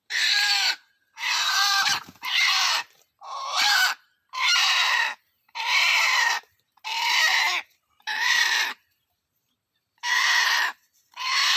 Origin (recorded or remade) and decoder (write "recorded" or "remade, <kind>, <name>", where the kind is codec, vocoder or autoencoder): remade, vocoder, BigVGAN v2